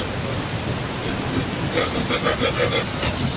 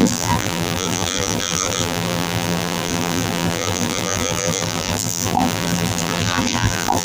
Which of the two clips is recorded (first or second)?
first